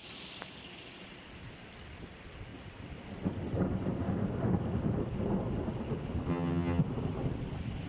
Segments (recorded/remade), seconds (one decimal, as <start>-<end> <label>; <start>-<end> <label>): 0.0-6.3 recorded; 6.3-6.8 remade; 6.8-7.9 recorded